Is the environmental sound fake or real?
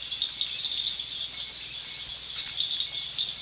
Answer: real